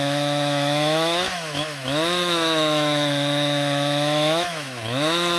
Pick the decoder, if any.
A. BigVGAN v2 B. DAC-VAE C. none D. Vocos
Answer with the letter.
B